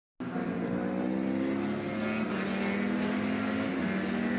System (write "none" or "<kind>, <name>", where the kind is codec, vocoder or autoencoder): none